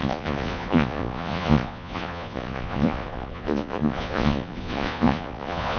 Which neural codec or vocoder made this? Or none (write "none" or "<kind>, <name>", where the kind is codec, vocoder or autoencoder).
vocoder, Vocos